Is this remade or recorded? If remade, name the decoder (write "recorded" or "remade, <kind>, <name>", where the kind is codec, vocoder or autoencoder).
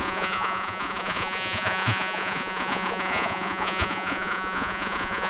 remade, vocoder, Vocos